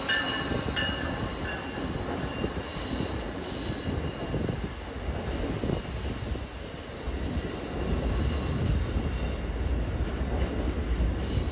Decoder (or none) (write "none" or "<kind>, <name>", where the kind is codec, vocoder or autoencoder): none